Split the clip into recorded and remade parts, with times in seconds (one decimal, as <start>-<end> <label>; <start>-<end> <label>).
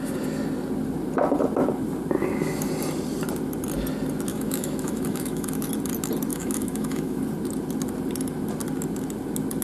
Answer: 0.0-4.3 recorded; 4.3-5.7 remade; 5.7-6.3 recorded; 6.3-7.2 remade; 7.2-9.6 recorded